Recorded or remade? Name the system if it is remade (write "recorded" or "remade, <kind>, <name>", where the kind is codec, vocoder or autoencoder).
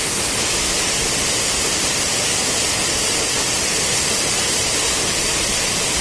recorded